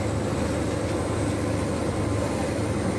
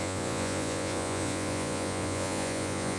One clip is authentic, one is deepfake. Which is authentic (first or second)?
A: first